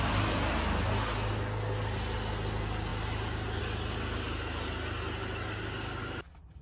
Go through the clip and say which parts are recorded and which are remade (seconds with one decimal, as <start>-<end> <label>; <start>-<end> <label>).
0.0-6.6 recorded